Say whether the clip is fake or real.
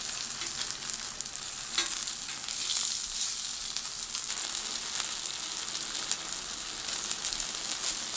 real